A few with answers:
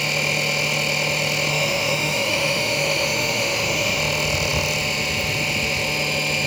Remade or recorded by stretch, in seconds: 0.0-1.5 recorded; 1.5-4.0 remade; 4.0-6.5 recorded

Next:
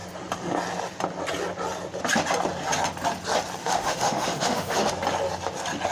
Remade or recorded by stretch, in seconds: 0.0-3.6 recorded; 3.6-4.9 remade; 4.9-5.9 recorded